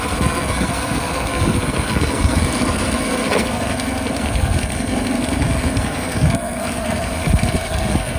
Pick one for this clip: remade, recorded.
remade